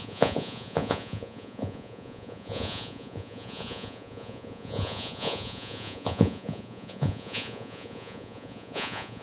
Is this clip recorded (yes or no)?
no